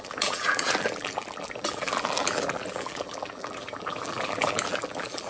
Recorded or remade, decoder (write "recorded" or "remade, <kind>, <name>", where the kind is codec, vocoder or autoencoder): remade, vocoder, BigVGAN v2